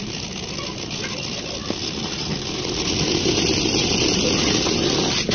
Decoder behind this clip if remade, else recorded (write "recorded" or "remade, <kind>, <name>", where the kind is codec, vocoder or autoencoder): recorded